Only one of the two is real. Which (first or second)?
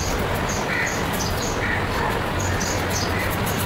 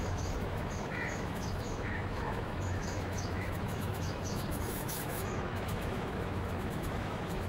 first